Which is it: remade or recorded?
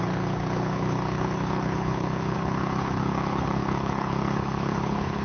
remade